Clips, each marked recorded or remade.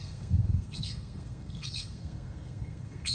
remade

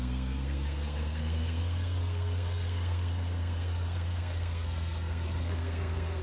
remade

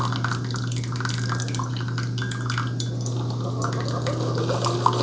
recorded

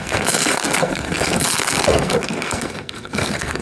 remade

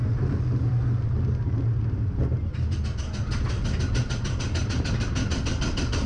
recorded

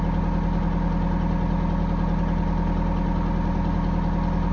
recorded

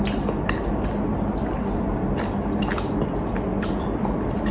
recorded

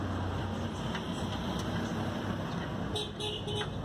recorded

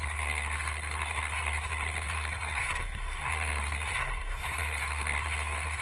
remade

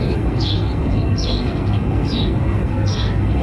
remade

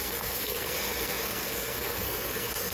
remade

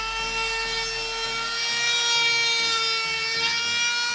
recorded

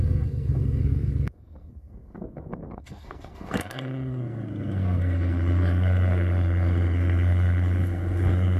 remade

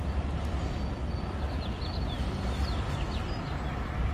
recorded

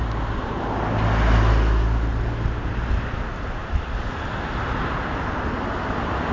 recorded